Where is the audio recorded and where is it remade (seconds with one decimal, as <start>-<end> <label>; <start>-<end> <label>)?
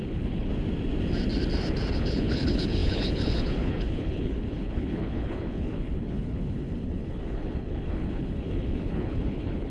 0.0-0.5 remade; 0.5-1.9 recorded; 1.9-9.7 remade